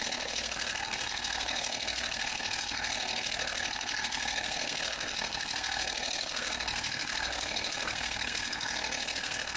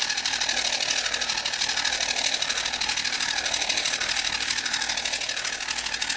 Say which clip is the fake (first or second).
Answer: first